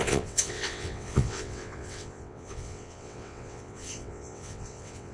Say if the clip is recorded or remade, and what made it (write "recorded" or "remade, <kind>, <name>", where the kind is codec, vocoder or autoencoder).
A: remade, vocoder, WaveNeXt